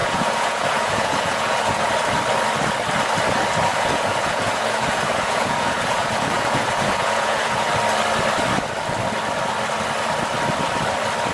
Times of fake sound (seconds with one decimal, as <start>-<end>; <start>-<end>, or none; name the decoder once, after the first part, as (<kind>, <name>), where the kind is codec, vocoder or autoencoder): 0.0-1.9 (vocoder, Vocos); 3.7-7.7